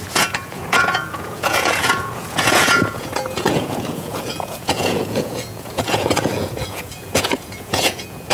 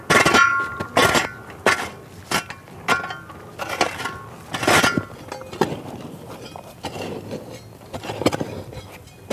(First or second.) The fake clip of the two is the first